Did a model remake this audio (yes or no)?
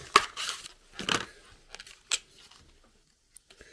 no